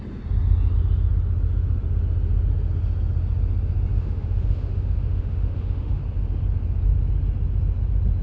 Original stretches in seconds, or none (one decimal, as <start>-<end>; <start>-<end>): 0.0-3.9; 6.0-8.2